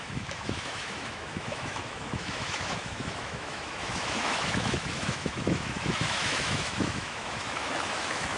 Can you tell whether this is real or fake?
fake